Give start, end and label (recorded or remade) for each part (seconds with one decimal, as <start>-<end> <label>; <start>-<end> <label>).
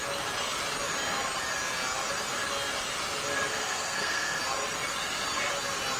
0.0-3.6 recorded; 3.6-4.4 remade; 4.4-6.0 recorded